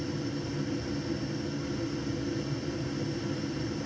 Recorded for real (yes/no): yes